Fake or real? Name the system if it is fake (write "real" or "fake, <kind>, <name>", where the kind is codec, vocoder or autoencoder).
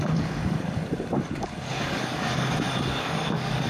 fake, codec, DAC